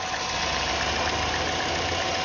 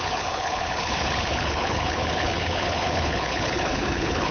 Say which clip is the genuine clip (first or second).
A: first